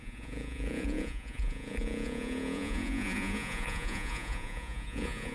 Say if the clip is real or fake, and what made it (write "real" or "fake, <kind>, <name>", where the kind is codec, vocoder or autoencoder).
fake, vocoder, Vocos